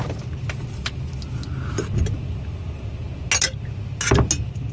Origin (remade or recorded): recorded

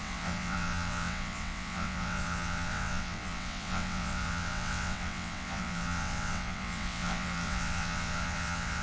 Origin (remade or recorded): remade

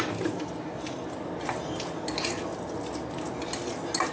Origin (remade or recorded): recorded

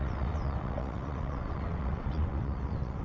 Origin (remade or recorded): remade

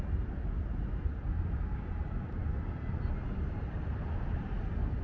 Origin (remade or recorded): recorded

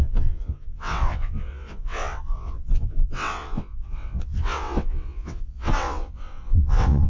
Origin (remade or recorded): remade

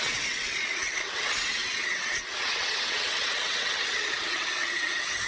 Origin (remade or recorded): remade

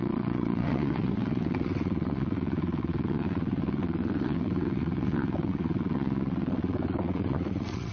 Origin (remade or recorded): remade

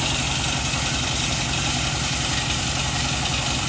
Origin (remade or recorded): recorded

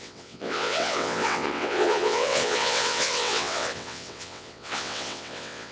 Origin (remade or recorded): remade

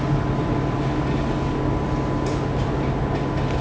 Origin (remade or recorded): recorded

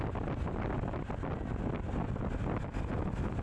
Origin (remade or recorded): recorded